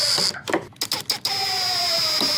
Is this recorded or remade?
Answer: recorded